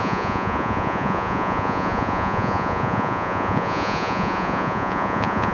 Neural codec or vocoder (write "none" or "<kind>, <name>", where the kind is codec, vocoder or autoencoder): vocoder, Vocos